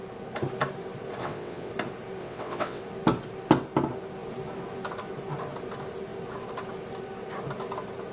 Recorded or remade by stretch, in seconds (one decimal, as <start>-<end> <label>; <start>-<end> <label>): 0.0-1.2 recorded; 1.2-1.7 remade; 1.7-2.2 recorded; 2.2-2.8 remade; 2.8-8.1 recorded